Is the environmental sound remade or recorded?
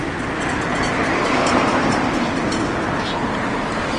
recorded